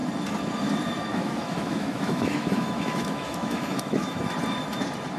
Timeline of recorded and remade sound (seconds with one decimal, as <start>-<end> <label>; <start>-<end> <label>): 0.0-1.1 recorded; 1.1-4.2 remade; 4.2-5.2 recorded